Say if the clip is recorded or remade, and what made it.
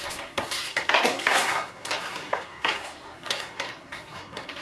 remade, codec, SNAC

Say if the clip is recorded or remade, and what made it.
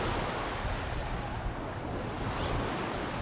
recorded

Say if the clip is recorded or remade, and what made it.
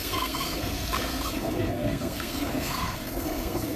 remade, codec, SNAC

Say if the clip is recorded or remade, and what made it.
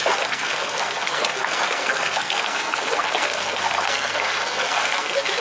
remade, codec, SNAC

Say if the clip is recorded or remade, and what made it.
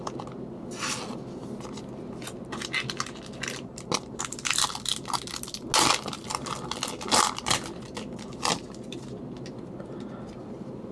recorded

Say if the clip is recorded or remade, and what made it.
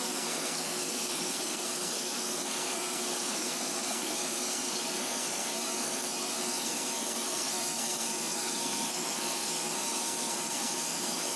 remade, codec, SNAC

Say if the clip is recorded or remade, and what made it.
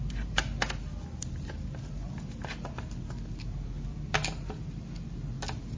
recorded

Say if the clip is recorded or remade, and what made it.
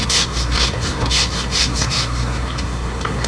remade, codec, SNAC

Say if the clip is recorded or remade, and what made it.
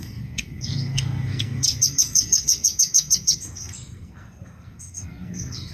remade, codec, SNAC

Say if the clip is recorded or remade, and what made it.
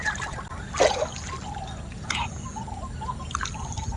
recorded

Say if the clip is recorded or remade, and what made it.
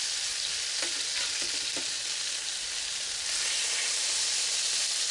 recorded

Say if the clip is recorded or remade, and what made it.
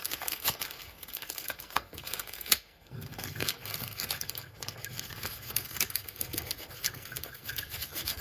remade, codec, SNAC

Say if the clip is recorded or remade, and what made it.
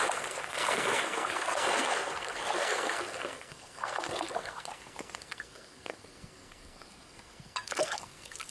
remade, codec, SNAC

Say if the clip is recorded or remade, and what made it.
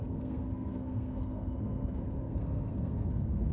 remade, codec, SNAC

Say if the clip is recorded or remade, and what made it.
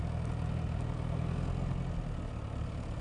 recorded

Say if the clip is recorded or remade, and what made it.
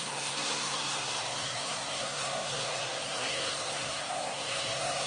remade, codec, SNAC